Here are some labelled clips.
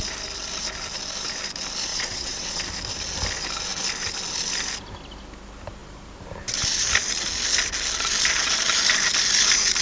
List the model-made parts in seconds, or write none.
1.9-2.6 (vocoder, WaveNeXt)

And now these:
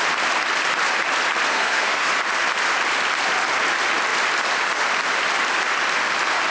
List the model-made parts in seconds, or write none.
1.5-2.1 (codec, SNAC)

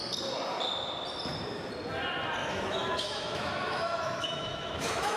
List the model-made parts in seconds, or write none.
2.4-5.2 (autoencoder, DAC-VAE)

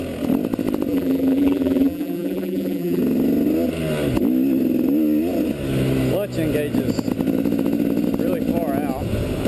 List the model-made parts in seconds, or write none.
0.9-3.0 (vocoder, BigVGAN v2)

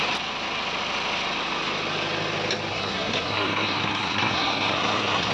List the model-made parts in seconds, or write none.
2.7-5.3 (codec, SNAC)

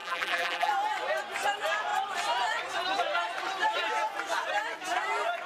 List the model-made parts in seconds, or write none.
0.0-0.7 (vocoder, BigVGAN v2)

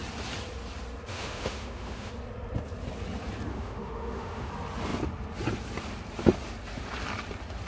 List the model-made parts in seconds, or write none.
1.1-2.1 (autoencoder, DAC-VAE); 3.5-4.5

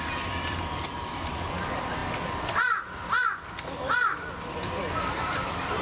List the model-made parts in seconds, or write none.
0.0-5.8 (vocoder, BigVGAN v2)